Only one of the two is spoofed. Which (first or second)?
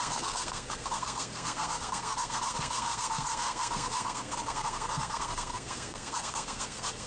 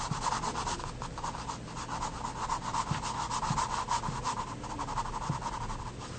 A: first